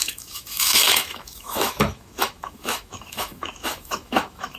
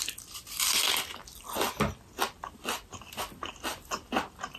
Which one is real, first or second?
second